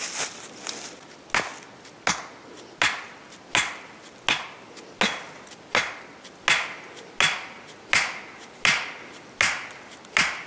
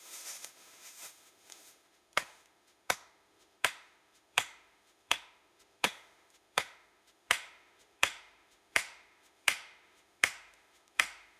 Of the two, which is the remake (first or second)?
second